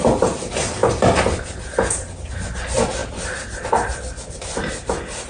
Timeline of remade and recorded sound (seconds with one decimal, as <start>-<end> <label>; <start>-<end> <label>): 0.0-5.3 recorded